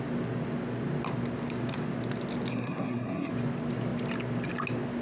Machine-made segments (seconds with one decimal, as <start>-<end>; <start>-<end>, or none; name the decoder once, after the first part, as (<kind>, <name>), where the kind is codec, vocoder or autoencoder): 2.5-3.3 (codec, SNAC)